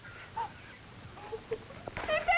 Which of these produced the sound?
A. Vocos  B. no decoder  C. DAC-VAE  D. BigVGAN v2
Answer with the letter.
B